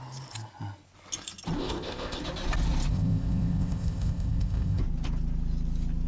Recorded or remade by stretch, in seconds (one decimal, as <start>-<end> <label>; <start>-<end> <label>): 0.0-1.6 recorded; 1.6-2.2 remade; 2.2-2.9 recorded; 2.9-4.8 remade; 4.8-6.1 recorded